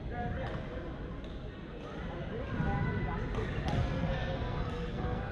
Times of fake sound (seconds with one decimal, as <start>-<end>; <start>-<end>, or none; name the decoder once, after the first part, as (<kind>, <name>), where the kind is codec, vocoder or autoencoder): 3.8-5.3 (codec, SNAC)